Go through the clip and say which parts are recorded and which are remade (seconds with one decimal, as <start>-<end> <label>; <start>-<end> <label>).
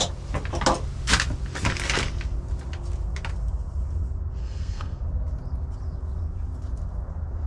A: 0.0-4.4 recorded; 4.4-5.0 remade; 5.0-7.5 recorded